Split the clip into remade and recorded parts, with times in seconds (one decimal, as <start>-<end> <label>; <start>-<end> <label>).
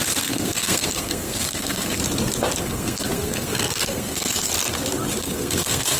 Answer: 0.0-2.0 remade; 2.0-2.6 recorded; 2.6-4.5 remade; 4.5-5.2 recorded; 5.2-6.0 remade